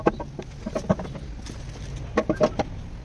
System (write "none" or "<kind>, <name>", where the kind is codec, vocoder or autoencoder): none